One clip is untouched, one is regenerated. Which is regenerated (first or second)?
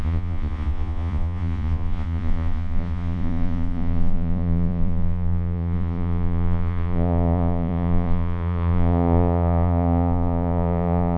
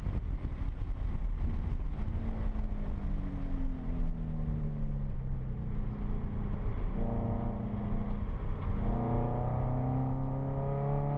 first